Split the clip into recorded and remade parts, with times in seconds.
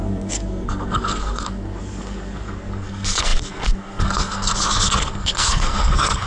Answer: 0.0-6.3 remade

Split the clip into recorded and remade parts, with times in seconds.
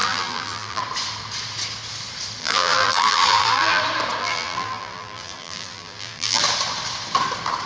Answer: 0.0-0.8 remade; 0.8-2.4 recorded; 2.4-3.8 remade; 3.8-4.2 recorded; 4.2-6.4 remade; 6.4-7.7 recorded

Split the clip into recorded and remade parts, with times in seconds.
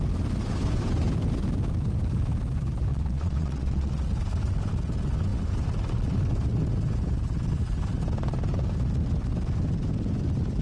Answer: 0.0-2.9 recorded; 2.9-4.1 remade; 4.1-10.6 recorded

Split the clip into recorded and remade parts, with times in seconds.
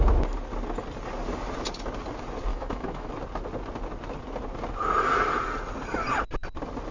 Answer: 0.0-2.5 recorded; 2.5-3.1 remade; 3.1-6.9 recorded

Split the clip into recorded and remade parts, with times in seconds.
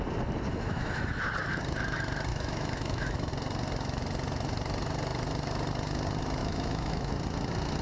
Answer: 0.0-0.5 recorded; 0.5-1.2 remade; 1.2-2.3 recorded; 2.3-3.3 remade; 3.3-6.4 recorded; 6.4-7.1 remade; 7.1-7.8 recorded